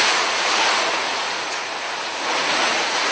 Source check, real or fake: fake